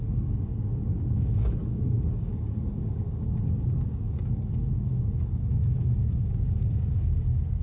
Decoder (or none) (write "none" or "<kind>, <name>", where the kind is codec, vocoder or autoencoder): codec, DAC